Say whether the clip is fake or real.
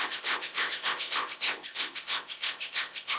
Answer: fake